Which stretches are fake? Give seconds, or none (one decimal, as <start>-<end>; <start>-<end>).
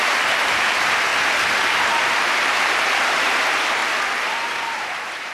0.0-1.1; 2.3-3.8; 4.5-5.3